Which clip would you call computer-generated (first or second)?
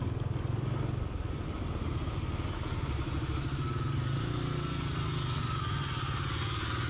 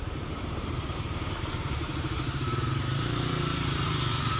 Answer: second